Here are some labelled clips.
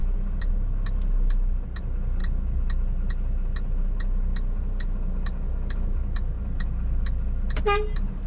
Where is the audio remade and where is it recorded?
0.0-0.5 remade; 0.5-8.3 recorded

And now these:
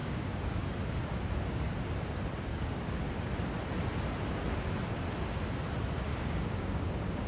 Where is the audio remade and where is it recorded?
0.0-0.7 remade; 0.7-2.5 recorded; 2.5-3.1 remade; 3.1-6.1 recorded; 6.1-7.3 remade

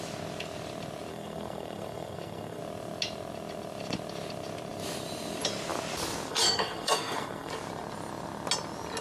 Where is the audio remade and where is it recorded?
0.0-1.1 recorded; 1.1-2.6 remade; 2.6-6.3 recorded; 6.3-7.5 remade; 7.5-9.0 recorded